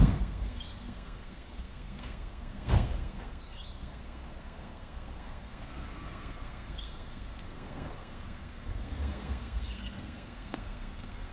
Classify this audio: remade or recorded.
remade